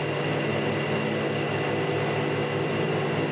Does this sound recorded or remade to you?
recorded